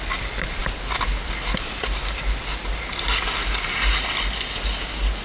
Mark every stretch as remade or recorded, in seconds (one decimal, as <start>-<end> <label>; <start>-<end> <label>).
0.0-5.2 recorded